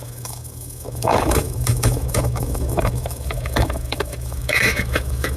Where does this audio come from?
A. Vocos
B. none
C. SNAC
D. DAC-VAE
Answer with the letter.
D